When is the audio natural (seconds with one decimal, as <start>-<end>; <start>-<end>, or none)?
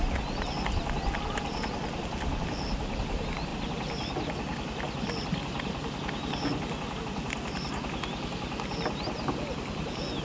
0.0-10.2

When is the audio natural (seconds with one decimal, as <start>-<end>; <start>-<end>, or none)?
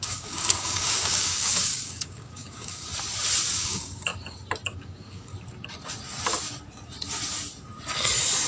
2.9-3.5; 4.1-4.7; 5.3-8.5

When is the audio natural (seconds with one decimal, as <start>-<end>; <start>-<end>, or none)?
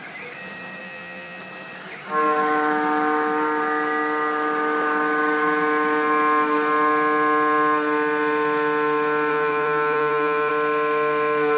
0.0-0.8; 1.4-9.3; 10.5-11.6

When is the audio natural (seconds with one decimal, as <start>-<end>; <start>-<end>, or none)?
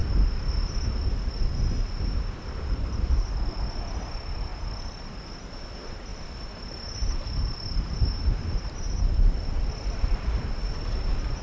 4.5-5.1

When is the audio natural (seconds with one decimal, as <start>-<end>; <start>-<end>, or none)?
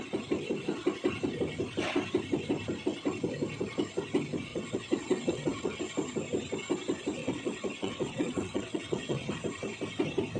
0.0-4.5; 5.8-7.2; 9.3-10.4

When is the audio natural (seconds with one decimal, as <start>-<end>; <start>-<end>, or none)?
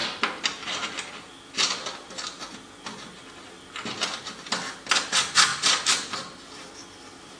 0.0-7.4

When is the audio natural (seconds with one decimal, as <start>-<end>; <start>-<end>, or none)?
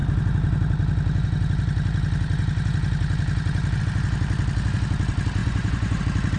0.0-5.4; 6.0-6.4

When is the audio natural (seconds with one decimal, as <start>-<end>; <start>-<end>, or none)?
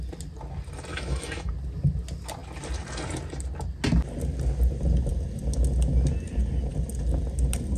0.0-0.9; 1.5-7.8